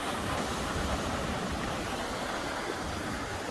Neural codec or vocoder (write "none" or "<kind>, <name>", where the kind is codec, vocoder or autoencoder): none